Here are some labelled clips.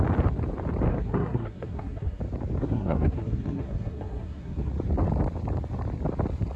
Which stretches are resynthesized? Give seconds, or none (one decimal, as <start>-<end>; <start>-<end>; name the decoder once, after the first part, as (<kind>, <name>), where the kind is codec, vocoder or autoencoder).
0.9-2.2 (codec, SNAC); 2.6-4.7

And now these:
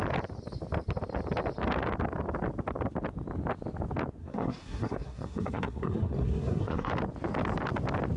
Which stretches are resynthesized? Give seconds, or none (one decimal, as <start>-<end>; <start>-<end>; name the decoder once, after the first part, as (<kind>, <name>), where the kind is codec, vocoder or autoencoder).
4.2-6.9 (codec, SNAC)

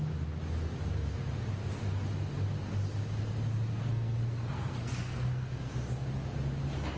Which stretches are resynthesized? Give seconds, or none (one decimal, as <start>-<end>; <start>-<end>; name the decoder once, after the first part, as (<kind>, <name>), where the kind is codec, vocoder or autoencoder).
3.7-5.7 (codec, SNAC)

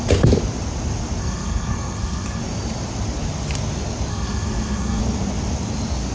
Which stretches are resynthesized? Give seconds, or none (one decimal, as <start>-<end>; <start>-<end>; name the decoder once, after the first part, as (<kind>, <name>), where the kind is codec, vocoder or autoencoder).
1.2-2.4 (codec, SNAC); 4.1-5.0

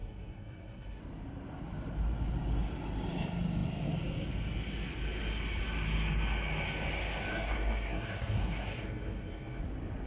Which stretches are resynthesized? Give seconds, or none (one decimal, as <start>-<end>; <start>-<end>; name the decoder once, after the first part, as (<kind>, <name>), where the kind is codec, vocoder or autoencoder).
0.0-1.0 (codec, SNAC); 7.3-9.6